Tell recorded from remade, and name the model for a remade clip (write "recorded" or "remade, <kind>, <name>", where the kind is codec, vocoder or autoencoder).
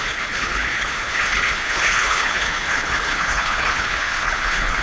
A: remade, codec, HILCodec